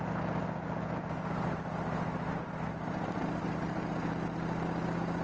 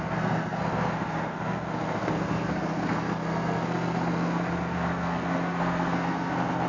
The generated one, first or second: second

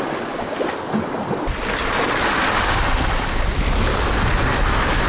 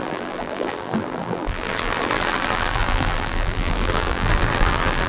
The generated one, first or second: second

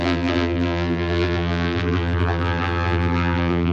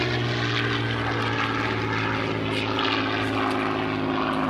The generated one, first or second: first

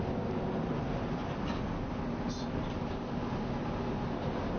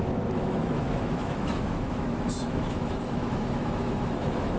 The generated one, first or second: second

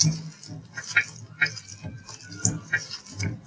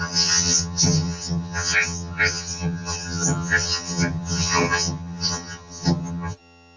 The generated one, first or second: second